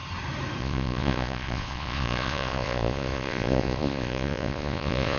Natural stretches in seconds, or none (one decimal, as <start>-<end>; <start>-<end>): 0.0-0.6